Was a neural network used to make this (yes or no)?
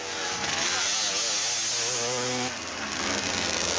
no